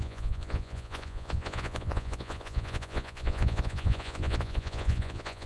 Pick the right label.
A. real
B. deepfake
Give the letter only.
B